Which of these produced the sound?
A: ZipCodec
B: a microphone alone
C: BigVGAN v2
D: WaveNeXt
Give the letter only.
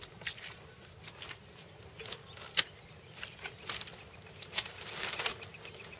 B